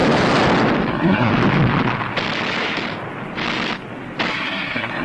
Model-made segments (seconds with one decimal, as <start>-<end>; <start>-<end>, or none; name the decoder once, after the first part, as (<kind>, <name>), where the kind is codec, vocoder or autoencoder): 0.9-1.3 (codec, SNAC); 4.3-5.0

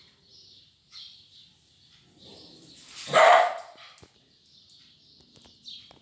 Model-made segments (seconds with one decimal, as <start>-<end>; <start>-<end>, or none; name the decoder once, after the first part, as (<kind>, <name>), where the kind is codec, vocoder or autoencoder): none

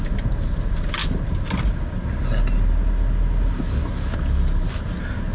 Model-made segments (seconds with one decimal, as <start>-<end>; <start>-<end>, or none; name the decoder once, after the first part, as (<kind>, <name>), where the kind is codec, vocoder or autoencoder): none

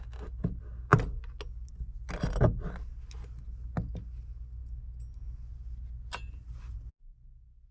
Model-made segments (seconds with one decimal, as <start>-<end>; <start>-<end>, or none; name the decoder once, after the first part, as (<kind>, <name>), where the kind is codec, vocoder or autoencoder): none

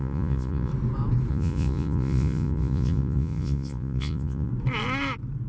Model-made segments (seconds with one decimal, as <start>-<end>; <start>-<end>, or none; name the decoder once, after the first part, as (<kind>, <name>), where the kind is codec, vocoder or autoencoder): 0.0-0.7 (vocoder, Vocos); 1.3-4.5

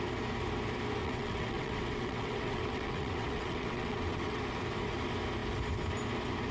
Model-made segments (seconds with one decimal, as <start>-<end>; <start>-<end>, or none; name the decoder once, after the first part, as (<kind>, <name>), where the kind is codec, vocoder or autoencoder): 1.0-4.4 (vocoder, WaveNeXt)

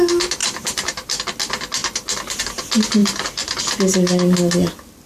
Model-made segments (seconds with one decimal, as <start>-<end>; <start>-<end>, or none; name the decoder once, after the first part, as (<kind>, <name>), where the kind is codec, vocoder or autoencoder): 0.4-1.2 (vocoder, BigVGAN v2); 3.0-3.6

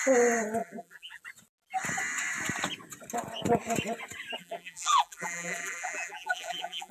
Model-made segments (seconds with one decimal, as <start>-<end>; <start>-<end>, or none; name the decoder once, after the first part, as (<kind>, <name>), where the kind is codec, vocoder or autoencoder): 0.6-1.2 (vocoder, BigVGAN v2); 4.4-6.9